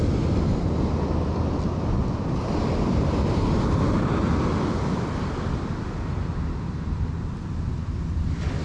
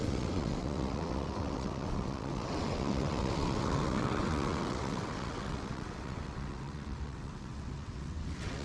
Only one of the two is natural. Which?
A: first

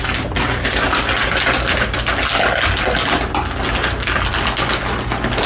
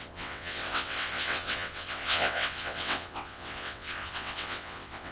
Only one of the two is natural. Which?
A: first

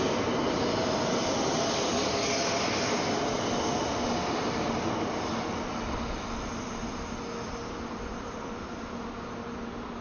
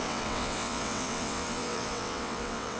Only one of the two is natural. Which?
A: first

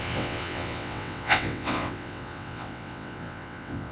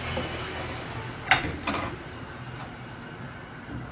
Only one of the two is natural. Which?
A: second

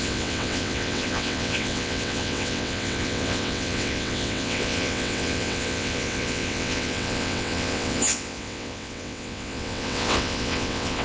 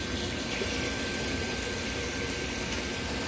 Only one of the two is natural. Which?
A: second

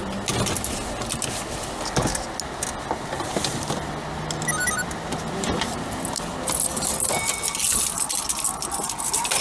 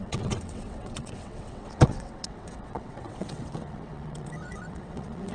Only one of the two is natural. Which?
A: first